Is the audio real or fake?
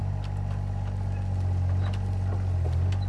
real